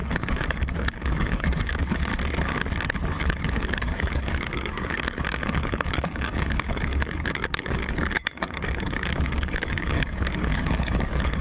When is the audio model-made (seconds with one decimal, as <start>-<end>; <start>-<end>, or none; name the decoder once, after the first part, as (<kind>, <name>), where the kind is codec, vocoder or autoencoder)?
0.0-2.1 (codec, DAC); 3.2-11.4